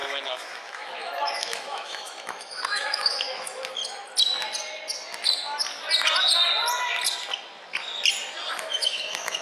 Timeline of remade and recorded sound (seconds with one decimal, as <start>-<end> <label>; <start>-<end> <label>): 0.0-3.8 remade; 3.8-8.6 recorded; 8.6-9.4 remade